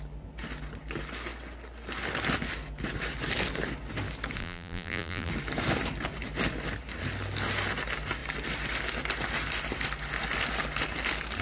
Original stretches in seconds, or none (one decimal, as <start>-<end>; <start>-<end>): 0.0-4.4; 5.3-11.4